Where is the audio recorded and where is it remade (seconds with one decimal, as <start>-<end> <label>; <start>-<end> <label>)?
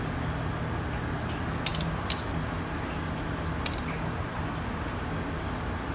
0.0-5.9 recorded